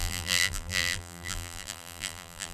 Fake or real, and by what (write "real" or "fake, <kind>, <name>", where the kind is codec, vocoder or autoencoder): fake, vocoder, BigVGAN v2